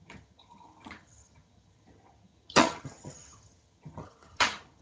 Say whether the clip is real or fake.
fake